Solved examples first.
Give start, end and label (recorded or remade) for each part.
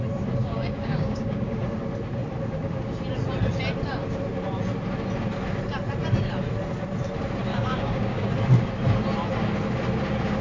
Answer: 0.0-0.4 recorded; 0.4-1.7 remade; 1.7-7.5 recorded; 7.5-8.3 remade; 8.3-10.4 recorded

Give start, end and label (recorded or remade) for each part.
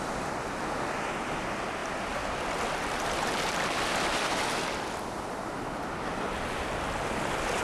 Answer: 0.0-7.6 recorded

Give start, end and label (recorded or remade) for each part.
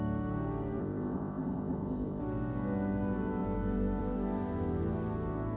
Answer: 0.0-0.8 recorded; 0.8-2.2 remade; 2.2-5.6 recorded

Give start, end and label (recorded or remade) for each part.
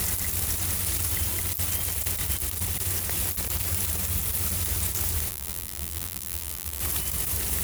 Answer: 0.0-5.3 recorded; 5.3-6.8 remade; 6.8-7.6 recorded